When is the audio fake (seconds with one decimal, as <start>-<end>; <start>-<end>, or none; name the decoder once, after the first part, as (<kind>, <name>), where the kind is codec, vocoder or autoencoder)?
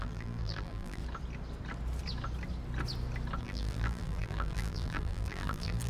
0.0-1.0 (vocoder, BigVGAN v2); 3.4-5.9